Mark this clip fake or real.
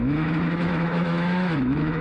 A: fake